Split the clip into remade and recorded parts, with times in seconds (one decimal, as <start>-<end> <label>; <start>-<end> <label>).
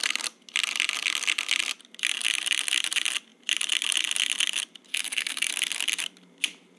0.0-4.9 recorded; 4.9-5.5 remade; 5.5-6.8 recorded